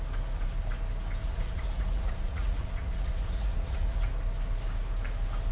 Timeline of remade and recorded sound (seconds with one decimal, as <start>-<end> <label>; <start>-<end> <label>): 0.0-1.2 recorded; 1.2-4.1 remade; 4.1-5.5 recorded